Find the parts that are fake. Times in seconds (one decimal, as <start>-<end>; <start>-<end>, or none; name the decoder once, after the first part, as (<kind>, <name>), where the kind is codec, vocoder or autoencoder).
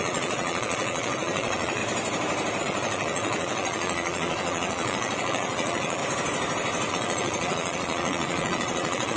0.0-1.8 (vocoder, Vocos); 2.6-6.0; 6.9-9.2